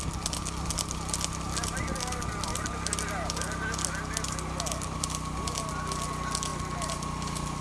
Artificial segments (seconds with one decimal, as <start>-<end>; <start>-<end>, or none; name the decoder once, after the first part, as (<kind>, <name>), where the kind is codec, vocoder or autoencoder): none